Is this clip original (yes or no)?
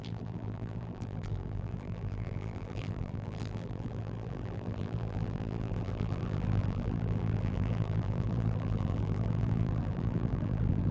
no